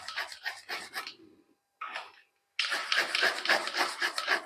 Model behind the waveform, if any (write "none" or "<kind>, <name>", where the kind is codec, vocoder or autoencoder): none